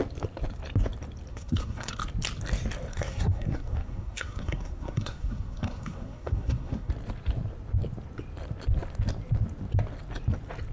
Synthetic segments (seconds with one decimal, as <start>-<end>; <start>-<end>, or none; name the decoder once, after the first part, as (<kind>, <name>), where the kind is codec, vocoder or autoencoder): 1.3-2.0 (codec, SNAC); 2.9-6.9